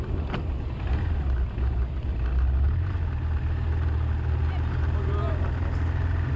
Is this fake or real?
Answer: real